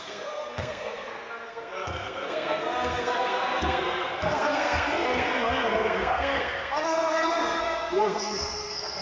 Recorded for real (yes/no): no